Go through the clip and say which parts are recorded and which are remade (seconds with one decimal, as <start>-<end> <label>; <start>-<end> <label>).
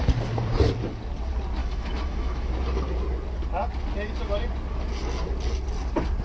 0.0-1.6 recorded; 1.6-2.5 remade; 2.5-6.2 recorded